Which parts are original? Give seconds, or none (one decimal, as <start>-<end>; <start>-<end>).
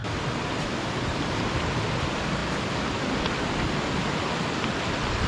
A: 0.0-5.3